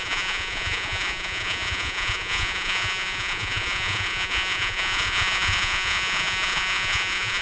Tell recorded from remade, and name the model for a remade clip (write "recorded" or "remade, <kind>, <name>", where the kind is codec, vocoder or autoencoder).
remade, vocoder, Vocos